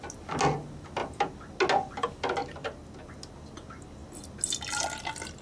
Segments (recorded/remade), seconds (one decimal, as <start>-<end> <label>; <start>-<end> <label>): 0.0-5.4 recorded